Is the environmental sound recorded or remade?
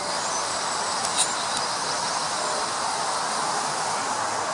recorded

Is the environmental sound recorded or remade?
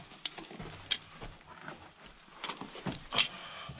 recorded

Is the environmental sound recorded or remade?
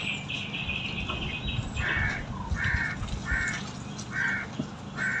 recorded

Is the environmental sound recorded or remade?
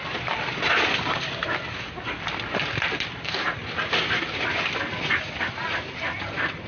recorded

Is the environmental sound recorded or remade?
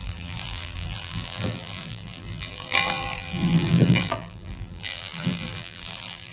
remade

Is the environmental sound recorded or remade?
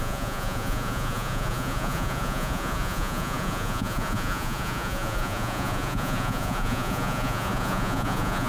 remade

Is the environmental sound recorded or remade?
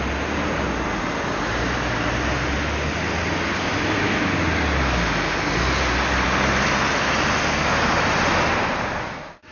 recorded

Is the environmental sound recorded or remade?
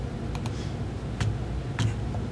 recorded